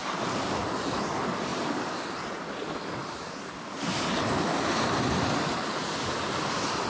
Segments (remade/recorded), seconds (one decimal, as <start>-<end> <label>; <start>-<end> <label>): 0.0-6.9 recorded